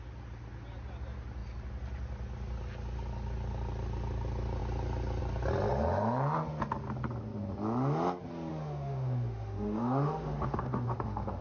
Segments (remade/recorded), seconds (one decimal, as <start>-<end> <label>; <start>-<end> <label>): 0.0-8.5 recorded; 8.5-11.4 remade